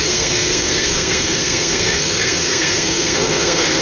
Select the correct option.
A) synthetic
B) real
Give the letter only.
A